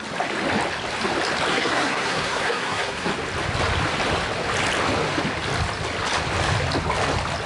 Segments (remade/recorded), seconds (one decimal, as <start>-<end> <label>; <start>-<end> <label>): 0.0-1.5 recorded; 1.5-3.1 remade; 3.1-7.5 recorded